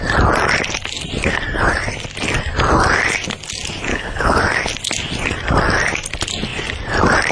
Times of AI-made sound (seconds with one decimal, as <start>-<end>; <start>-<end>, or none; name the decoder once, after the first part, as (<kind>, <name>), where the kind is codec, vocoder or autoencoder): 3.9-4.4 (codec, HILCodec)